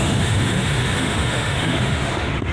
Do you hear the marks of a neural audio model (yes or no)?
yes